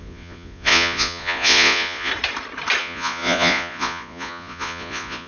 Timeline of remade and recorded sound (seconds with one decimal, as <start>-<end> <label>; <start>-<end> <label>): 0.0-2.1 remade; 2.1-2.8 recorded; 2.8-5.3 remade

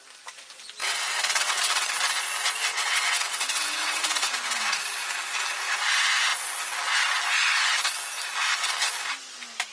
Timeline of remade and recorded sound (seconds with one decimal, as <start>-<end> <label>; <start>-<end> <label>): 0.0-0.8 recorded; 0.8-1.9 remade; 1.9-2.7 recorded; 2.7-4.8 remade; 4.8-9.7 recorded

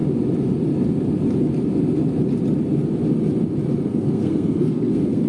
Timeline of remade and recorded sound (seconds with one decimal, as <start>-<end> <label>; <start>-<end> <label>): 0.0-3.9 recorded; 3.9-5.3 remade

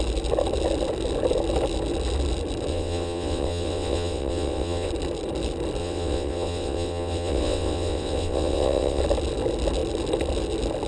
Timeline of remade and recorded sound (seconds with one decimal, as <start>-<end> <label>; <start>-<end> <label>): 0.0-2.7 recorded; 2.7-4.9 remade; 4.9-5.8 recorded; 5.8-9.0 remade; 9.0-10.9 recorded

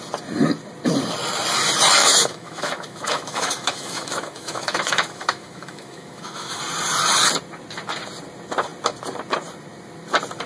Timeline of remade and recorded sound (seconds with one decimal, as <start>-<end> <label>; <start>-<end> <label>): 0.0-2.0 recorded; 2.0-6.6 remade; 6.6-10.5 recorded